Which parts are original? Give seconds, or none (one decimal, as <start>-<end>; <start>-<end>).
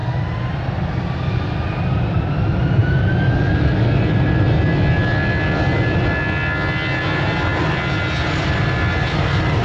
0.0-9.6